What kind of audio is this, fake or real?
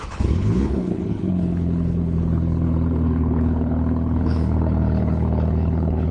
fake